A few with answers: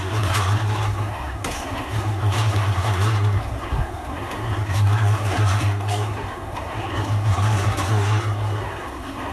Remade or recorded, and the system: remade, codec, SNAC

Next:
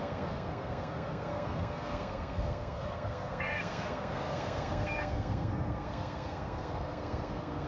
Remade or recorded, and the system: remade, codec, SNAC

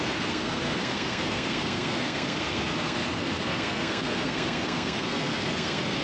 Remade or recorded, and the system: remade, codec, SNAC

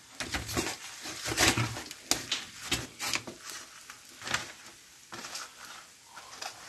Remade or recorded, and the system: recorded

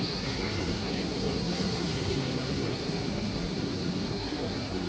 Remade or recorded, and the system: remade, codec, SNAC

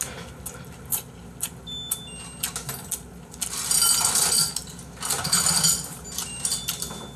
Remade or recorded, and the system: recorded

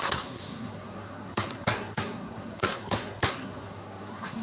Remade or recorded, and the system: remade, codec, SNAC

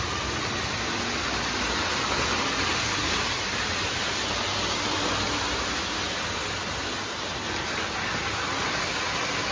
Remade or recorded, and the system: recorded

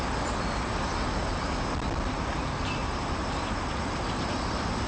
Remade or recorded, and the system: recorded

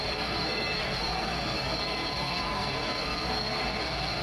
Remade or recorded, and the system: remade, codec, SNAC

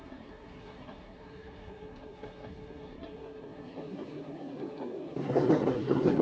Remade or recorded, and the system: remade, codec, SNAC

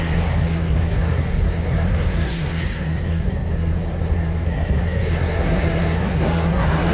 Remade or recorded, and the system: remade, codec, SNAC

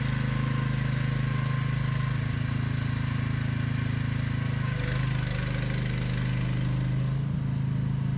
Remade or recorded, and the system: recorded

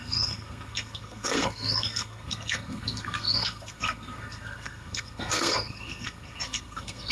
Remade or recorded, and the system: remade, codec, SNAC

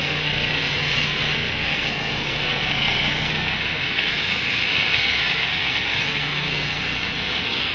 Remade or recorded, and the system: remade, codec, SNAC